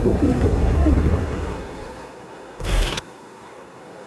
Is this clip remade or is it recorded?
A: remade